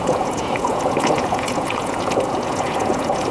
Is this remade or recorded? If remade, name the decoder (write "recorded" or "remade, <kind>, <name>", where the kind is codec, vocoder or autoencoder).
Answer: remade, vocoder, Vocos